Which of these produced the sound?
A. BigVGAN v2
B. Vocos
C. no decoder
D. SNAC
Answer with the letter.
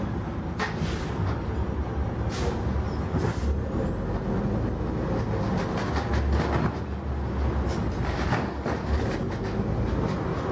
C